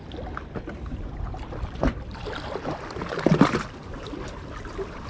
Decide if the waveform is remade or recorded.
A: remade